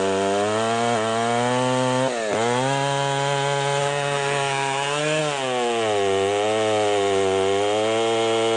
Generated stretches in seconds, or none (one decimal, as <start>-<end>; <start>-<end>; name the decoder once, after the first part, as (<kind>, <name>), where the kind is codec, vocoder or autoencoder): 3.8-5.2 (codec, SNAC)